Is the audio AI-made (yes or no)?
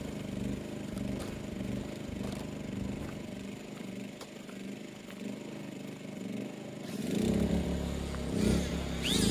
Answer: no